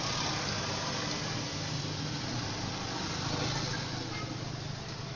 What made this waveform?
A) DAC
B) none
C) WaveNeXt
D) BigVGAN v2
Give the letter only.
B